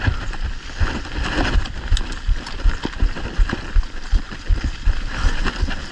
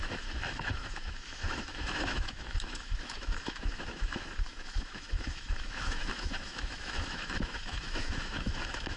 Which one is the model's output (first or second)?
second